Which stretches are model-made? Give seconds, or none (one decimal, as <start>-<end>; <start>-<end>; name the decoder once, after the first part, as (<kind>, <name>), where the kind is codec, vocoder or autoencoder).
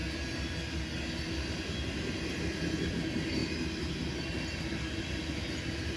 none